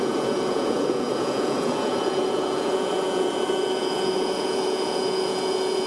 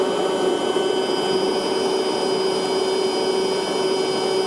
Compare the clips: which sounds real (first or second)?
second